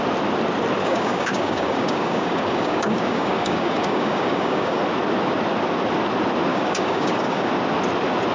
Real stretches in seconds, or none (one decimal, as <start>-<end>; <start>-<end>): 0.0-0.8; 4.8-6.5; 7.5-8.3

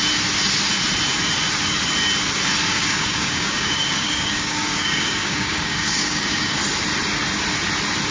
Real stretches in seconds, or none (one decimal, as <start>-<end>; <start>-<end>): 0.0-2.6; 6.6-8.1

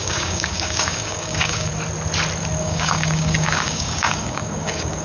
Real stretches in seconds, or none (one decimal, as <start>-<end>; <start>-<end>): 1.7-2.6

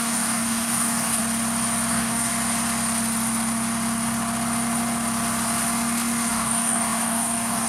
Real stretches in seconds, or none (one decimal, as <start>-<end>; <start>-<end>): 1.2-1.9; 2.3-6.3

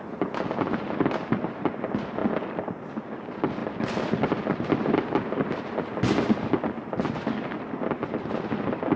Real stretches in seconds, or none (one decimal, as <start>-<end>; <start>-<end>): 0.0-9.0

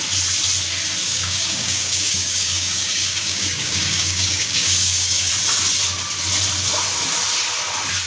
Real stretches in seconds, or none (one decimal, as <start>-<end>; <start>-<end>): 0.0-1.0; 5.3-8.1

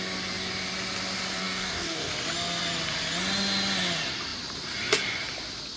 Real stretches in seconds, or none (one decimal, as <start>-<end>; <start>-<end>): 0.0-1.4; 2.1-5.8